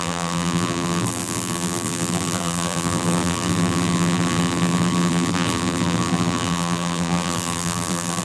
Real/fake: fake